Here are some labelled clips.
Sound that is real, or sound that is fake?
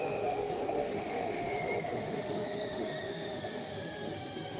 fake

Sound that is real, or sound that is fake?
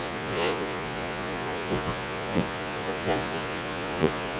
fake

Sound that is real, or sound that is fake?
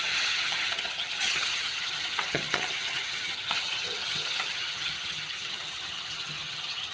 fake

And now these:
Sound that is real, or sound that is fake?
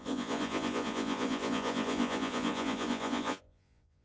fake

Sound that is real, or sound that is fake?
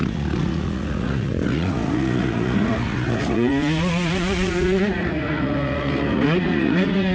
fake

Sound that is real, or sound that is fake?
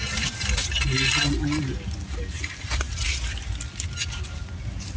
real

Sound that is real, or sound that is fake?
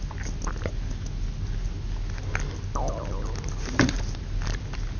real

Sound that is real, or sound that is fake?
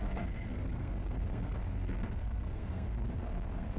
fake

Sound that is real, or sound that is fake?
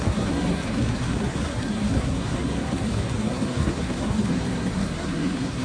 fake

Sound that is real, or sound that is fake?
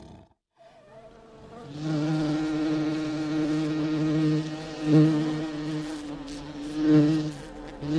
real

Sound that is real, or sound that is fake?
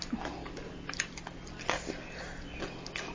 real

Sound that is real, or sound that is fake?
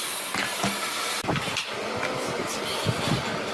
real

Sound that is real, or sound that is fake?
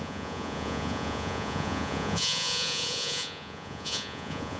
fake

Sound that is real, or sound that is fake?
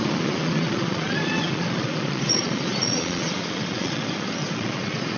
fake